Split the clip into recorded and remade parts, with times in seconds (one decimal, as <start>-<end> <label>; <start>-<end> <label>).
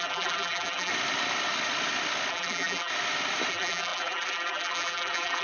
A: 0.0-0.9 remade; 0.9-2.3 recorded; 2.3-2.9 remade; 2.9-3.5 recorded; 3.5-5.4 remade